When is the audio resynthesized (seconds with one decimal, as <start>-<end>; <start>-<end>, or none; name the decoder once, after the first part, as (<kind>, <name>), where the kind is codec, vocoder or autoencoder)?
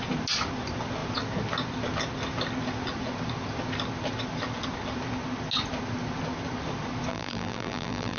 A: 7.1-8.2 (vocoder, BigVGAN v2)